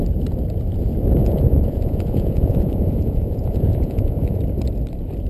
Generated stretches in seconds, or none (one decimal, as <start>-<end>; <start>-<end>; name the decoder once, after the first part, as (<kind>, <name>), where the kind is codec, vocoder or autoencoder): 1.2-4.4 (vocoder, Vocos)